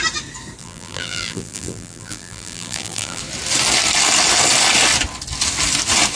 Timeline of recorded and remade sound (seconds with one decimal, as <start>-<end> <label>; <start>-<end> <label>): 0.0-0.6 recorded; 0.6-3.2 remade; 3.2-6.2 recorded